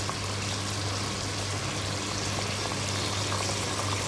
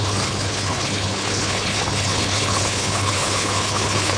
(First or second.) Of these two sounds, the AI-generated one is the second